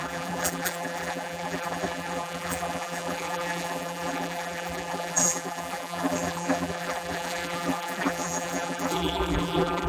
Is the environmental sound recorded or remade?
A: remade